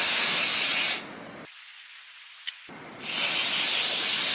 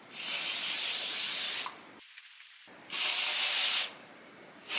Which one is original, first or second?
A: first